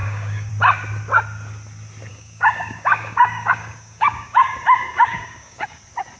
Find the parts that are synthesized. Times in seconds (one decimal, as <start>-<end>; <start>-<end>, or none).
0.0-0.5; 2.1-5.8